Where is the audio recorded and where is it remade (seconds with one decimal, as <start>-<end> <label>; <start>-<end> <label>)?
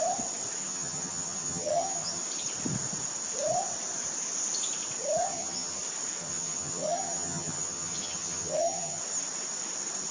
0.0-0.6 recorded; 0.6-2.2 remade; 2.2-5.3 recorded; 5.3-5.8 remade; 5.8-6.2 recorded; 6.2-9.0 remade; 9.0-10.1 recorded